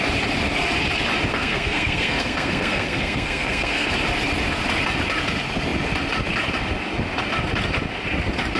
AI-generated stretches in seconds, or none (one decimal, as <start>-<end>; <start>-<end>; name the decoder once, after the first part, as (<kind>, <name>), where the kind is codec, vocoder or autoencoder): 1.3-3.9 (codec, SNAC)